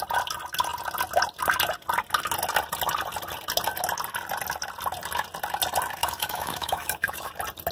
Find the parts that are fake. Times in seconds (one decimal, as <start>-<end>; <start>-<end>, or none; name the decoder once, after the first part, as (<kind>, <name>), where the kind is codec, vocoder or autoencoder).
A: 6.0-7.3 (autoencoder, DAC-VAE)